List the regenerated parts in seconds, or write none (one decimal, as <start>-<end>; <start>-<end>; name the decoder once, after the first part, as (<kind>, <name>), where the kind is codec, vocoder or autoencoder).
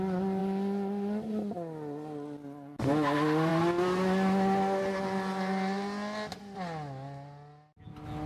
none